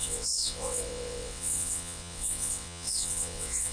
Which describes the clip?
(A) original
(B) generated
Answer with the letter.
B